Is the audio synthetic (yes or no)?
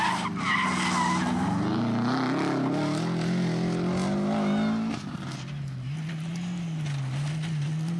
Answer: no